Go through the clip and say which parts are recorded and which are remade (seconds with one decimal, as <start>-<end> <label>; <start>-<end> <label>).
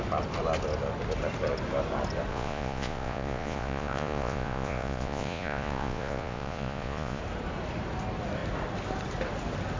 0.0-2.3 recorded; 2.3-7.2 remade; 7.2-9.8 recorded